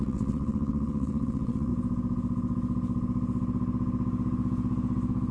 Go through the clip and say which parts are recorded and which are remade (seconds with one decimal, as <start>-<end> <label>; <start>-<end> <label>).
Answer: 0.0-1.7 remade; 1.7-5.3 recorded